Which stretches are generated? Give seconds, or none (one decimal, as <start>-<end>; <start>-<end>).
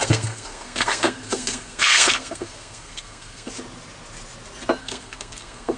0.0-3.5; 4.8-5.8